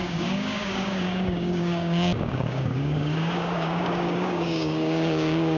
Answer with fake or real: fake